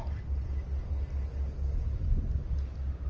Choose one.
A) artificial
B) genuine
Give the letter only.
B